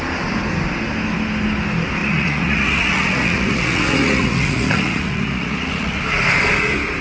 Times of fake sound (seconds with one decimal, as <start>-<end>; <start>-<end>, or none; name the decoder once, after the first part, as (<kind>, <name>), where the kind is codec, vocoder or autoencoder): 2.0-6.0 (vocoder, Vocos)